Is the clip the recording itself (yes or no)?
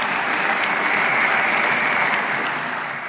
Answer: yes